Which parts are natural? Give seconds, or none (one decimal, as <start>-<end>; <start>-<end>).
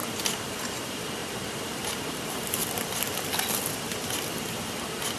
0.0-2.6; 4.5-5.2